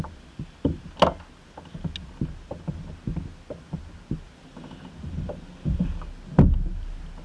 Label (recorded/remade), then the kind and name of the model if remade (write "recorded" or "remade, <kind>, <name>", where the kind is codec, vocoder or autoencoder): recorded